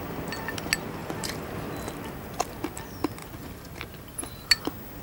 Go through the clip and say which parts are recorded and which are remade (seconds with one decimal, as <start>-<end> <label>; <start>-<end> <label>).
0.0-1.0 recorded; 1.0-1.5 remade; 1.5-3.2 recorded; 3.2-4.6 remade; 4.6-5.0 recorded